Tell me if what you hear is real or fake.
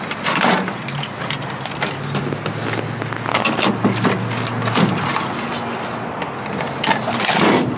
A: real